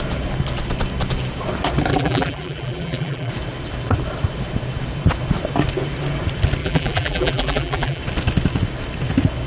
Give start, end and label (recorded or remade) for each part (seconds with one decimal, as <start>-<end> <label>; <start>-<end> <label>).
0.0-1.9 recorded; 1.9-3.3 remade; 3.3-6.6 recorded; 6.6-8.0 remade; 8.0-9.5 recorded